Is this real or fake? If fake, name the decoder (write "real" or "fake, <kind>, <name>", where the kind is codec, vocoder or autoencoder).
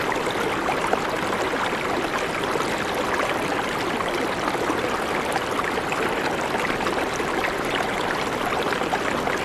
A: real